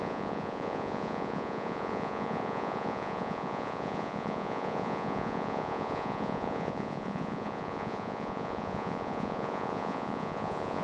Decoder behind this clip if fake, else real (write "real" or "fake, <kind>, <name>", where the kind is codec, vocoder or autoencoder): fake, vocoder, Vocos